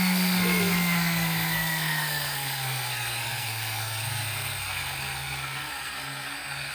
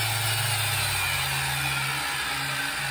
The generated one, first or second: first